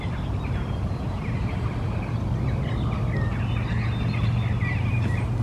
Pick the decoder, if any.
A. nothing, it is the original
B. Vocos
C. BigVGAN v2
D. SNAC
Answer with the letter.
A